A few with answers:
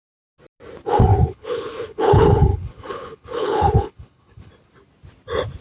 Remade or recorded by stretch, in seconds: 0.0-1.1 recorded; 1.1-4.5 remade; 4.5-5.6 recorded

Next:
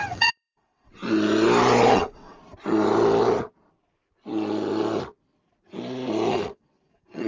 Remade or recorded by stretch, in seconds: 0.0-1.0 remade; 1.0-1.9 recorded; 1.9-2.4 remade; 2.4-6.3 recorded; 6.3-7.3 remade

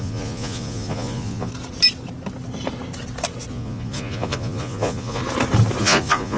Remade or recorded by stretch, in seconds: 0.0-1.5 remade; 1.5-3.5 recorded; 3.5-5.2 remade; 5.2-5.8 recorded; 5.8-6.4 remade

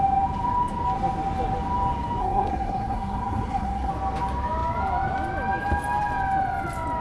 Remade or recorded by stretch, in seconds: 0.0-2.2 recorded; 2.2-3.9 remade; 3.9-7.0 recorded

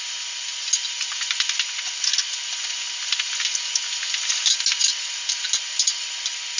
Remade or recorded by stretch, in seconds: 0.0-6.6 recorded

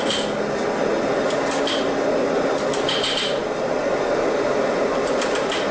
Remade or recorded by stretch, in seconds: 0.0-5.7 recorded

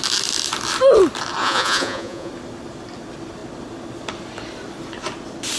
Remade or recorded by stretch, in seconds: 0.0-1.4 recorded; 1.4-2.3 remade; 2.3-5.6 recorded

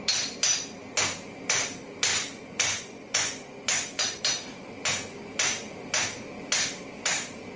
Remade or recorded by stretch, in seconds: 0.0-2.1 recorded; 2.1-4.2 remade; 4.2-7.6 recorded